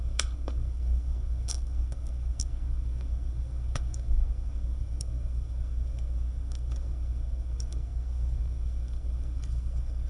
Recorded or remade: remade